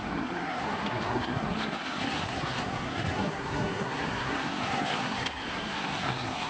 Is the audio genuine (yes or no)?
no